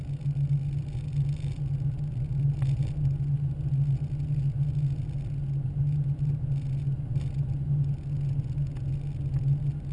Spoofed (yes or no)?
no